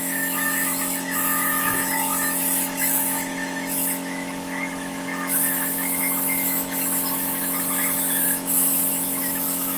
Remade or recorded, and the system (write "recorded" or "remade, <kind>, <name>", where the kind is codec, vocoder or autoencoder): remade, autoencoder, DAC-VAE